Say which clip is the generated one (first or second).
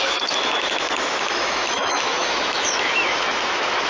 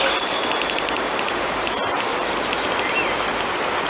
first